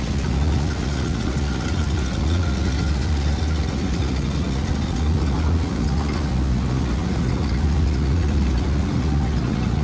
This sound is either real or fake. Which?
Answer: fake